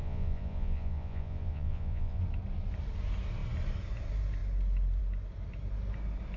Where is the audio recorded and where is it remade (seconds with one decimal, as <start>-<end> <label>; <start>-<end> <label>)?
0.0-2.2 remade; 2.2-6.4 recorded